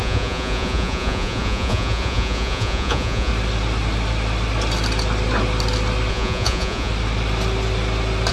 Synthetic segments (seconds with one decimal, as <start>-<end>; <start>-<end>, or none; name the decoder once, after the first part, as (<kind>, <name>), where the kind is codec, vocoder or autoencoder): 0.0-3.3 (vocoder, Vocos); 6.1-6.9